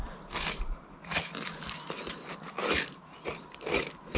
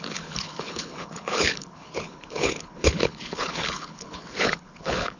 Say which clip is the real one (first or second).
first